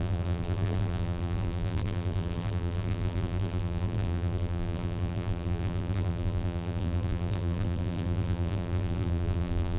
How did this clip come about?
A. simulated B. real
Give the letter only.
A